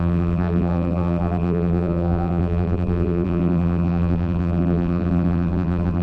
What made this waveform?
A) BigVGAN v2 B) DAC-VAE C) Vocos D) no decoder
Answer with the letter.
A